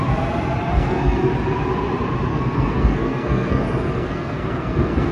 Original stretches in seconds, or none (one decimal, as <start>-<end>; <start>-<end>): 0.0-0.7; 1.3-2.3